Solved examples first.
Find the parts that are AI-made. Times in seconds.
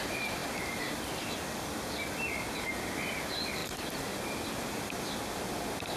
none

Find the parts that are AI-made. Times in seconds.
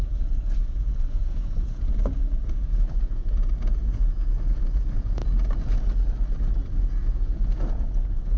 0.0-5.2 (vocoder, Vocos); 7.0-8.4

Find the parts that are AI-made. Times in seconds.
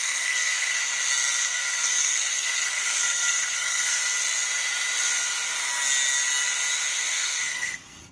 0.0-0.8 (codec, SNAC); 1.4-4.0; 6.9-8.1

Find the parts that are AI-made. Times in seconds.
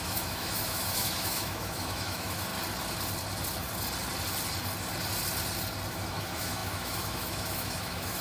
0.0-2.5 (autoencoder, DAC-VAE); 5.9-8.2